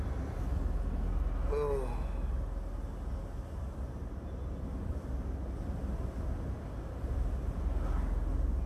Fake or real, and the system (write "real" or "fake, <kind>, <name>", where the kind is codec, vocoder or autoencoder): real